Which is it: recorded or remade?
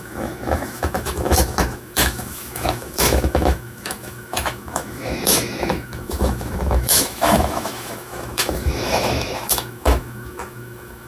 remade